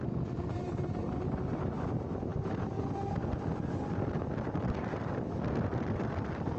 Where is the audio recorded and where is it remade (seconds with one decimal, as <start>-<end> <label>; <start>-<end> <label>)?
0.0-6.6 recorded